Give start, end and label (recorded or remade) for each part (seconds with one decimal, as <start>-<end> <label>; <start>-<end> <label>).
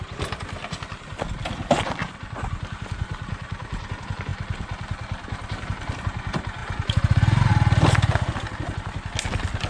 0.0-2.0 recorded; 2.0-3.9 remade; 3.9-6.6 recorded; 6.6-7.5 remade; 7.5-9.7 recorded